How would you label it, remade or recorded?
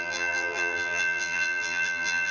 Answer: remade